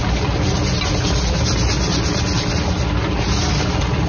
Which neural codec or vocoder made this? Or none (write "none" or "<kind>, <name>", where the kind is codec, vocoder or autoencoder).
none